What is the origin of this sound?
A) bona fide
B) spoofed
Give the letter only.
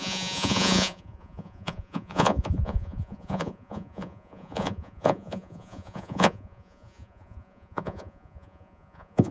B